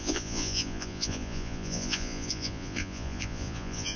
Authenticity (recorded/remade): remade